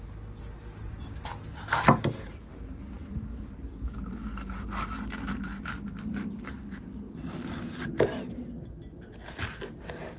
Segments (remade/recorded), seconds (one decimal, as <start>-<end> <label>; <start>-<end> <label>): 0.0-10.2 recorded